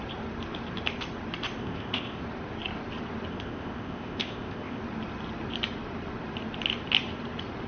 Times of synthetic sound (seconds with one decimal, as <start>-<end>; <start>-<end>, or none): 1.6-2.2; 3.3-4.8